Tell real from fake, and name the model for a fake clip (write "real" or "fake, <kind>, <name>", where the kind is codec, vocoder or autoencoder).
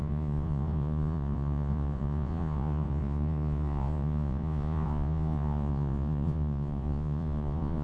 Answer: fake, vocoder, Vocos